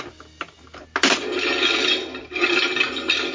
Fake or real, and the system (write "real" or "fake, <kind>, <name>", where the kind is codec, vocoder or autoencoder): real